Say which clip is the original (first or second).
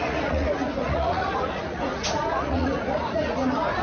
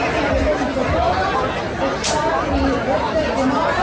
second